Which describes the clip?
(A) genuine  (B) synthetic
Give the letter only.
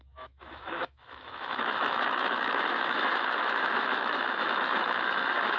B